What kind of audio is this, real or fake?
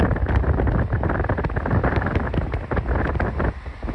real